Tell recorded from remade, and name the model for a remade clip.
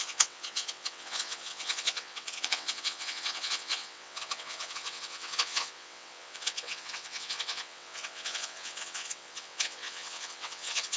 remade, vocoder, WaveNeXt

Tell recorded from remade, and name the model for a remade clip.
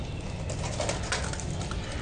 recorded